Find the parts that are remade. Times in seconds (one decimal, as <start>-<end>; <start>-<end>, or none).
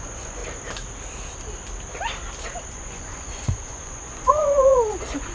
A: 0.0-0.4; 2.7-5.3